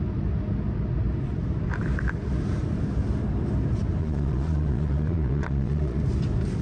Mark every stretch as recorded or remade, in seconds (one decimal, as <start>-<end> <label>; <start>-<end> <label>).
0.0-4.0 recorded; 4.0-6.0 remade; 6.0-6.6 recorded